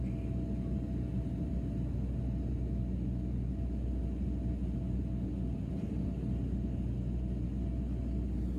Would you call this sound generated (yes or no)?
no